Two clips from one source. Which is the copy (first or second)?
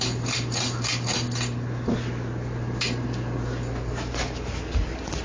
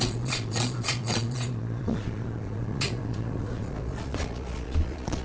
second